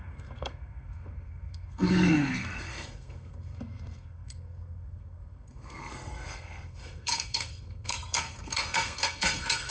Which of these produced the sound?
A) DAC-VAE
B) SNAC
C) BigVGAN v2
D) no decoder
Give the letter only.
B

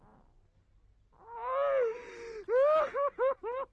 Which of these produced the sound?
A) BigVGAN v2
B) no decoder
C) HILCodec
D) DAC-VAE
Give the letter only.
B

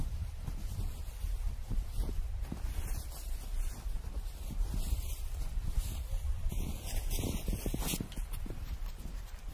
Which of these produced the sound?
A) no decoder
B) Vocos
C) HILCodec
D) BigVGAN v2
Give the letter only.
A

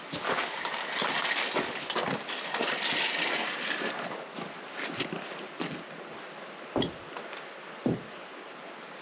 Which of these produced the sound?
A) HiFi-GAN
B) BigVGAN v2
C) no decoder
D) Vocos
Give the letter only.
C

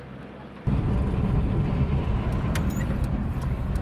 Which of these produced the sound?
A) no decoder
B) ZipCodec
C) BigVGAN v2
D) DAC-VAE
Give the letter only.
A